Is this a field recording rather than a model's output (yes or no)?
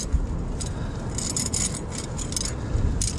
yes